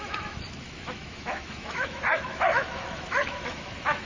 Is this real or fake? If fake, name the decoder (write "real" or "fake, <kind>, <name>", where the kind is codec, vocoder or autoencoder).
fake, autoencoder, DAC-VAE